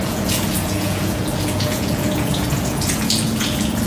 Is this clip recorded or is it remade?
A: remade